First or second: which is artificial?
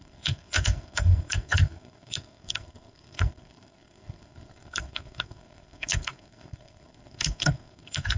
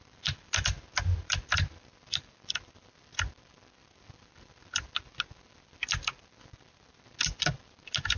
first